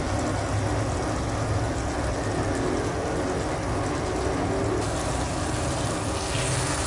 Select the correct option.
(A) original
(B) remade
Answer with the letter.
A